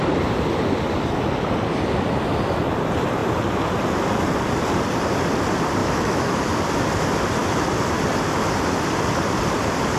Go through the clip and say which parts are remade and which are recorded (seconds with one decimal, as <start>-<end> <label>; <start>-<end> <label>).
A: 0.0-5.8 recorded; 5.8-6.4 remade; 6.4-10.0 recorded